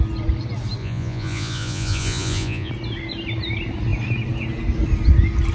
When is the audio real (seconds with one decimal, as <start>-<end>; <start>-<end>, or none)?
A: 0.0-0.8; 2.7-5.5